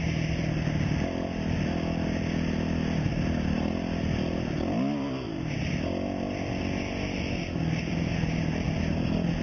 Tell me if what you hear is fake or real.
real